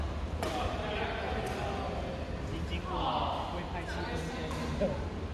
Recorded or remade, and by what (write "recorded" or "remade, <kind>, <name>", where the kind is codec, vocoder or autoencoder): recorded